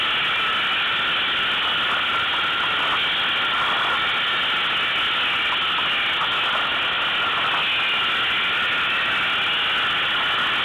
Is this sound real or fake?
real